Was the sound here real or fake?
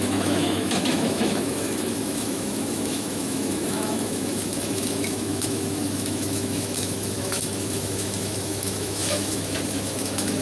fake